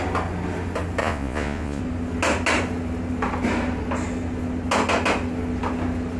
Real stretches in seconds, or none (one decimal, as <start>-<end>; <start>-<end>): 0.0-1.0; 1.8-6.2